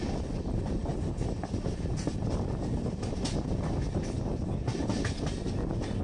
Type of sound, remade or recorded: recorded